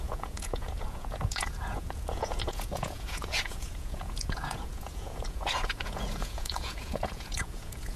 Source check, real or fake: fake